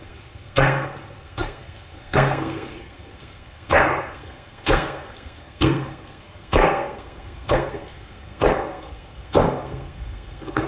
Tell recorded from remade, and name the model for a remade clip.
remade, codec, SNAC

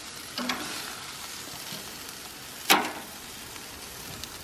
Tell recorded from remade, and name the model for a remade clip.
recorded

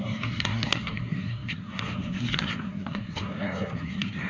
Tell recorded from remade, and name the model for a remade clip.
remade, codec, SNAC